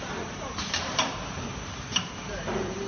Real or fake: fake